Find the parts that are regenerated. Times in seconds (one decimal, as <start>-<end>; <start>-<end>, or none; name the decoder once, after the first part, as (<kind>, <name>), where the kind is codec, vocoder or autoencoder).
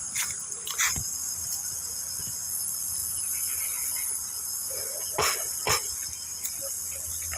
1.2-2.2 (vocoder, BigVGAN v2)